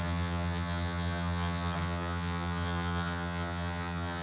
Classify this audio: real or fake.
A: fake